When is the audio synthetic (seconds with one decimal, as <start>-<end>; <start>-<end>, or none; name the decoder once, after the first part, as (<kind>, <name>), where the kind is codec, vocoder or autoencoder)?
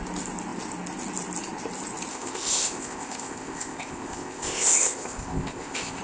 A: 2.1-6.0 (codec, ZipCodec)